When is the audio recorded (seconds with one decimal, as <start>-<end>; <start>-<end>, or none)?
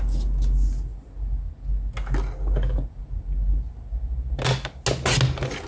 0.0-5.7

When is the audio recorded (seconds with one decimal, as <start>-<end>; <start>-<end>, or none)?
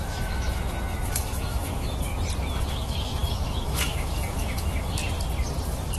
2.1-2.7; 5.0-6.0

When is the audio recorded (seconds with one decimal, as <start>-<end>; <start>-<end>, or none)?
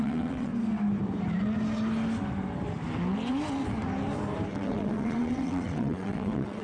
0.5-4.5